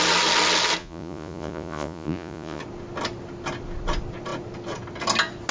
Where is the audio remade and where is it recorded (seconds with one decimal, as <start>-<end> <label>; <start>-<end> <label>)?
0.0-0.8 recorded; 0.8-2.6 remade; 2.6-5.5 recorded